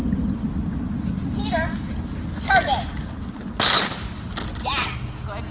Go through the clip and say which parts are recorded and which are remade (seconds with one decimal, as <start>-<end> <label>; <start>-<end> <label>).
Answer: 0.0-5.5 recorded